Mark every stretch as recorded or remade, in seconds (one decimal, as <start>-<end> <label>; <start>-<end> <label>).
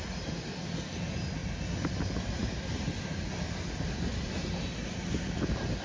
0.0-1.4 recorded; 1.4-3.0 remade; 3.0-5.8 recorded